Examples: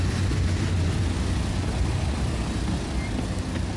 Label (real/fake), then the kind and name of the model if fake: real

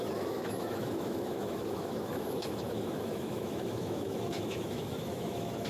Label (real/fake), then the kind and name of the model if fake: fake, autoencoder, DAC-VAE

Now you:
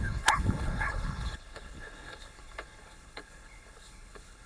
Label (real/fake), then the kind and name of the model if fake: fake, codec, HILCodec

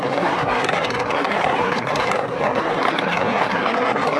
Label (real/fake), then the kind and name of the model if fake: fake, codec, SNAC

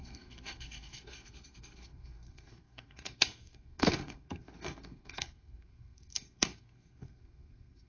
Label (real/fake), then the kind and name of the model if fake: fake, codec, SNAC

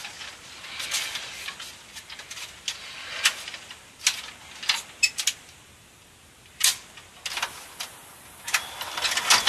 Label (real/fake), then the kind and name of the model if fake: real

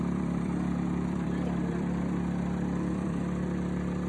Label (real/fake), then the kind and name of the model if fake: fake, vocoder, BigVGAN v2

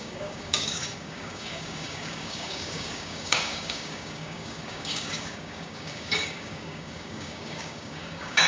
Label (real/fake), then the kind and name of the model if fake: fake, codec, DAC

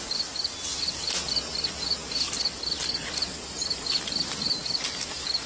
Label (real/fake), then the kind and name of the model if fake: real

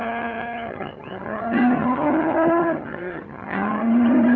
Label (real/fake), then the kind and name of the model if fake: fake, vocoder, HiFi-GAN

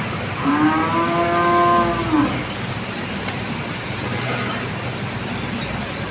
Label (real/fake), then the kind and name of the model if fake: real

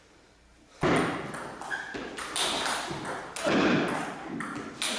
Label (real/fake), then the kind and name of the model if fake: real